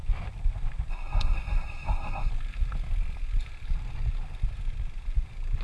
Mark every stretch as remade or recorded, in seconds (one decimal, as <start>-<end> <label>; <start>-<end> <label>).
0.0-0.9 recorded; 0.9-2.3 remade; 2.3-5.6 recorded